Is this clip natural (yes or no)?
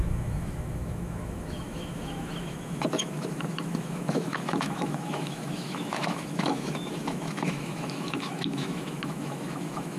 no